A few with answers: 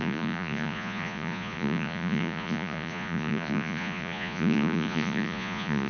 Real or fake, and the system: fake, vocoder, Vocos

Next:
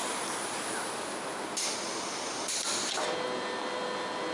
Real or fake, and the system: real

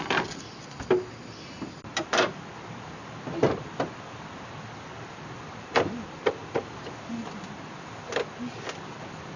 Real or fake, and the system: real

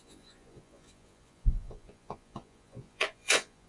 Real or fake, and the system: fake, vocoder, Vocos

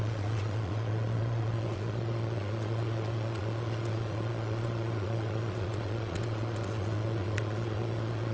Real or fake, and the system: fake, vocoder, Vocos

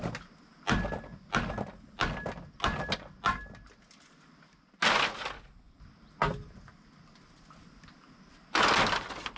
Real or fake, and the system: real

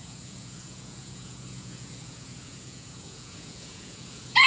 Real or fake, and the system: fake, vocoder, Vocos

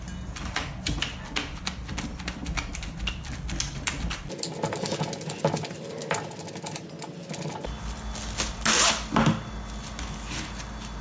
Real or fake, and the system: real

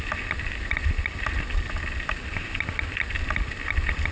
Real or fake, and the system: real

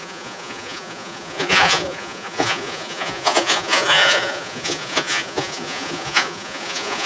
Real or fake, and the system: fake, vocoder, Vocos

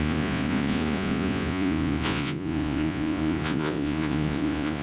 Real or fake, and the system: fake, vocoder, Vocos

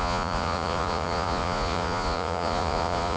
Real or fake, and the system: fake, vocoder, Vocos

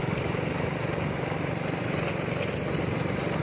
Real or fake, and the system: real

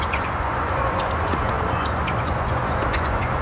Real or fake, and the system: fake, vocoder, Vocos